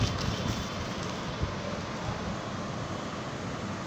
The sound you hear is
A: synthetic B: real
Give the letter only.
B